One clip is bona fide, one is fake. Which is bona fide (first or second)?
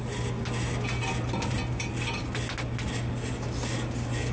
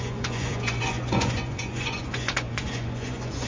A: first